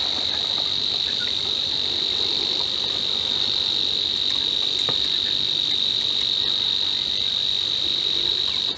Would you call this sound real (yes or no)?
no